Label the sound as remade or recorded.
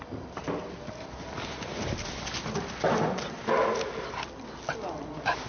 recorded